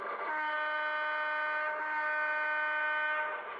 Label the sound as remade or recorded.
recorded